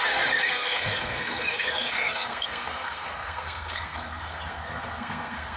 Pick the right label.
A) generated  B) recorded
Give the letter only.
A